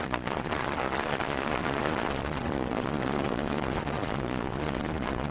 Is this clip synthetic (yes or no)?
yes